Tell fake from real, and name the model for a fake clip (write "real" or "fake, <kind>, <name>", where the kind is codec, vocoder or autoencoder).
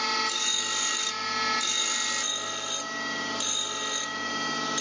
real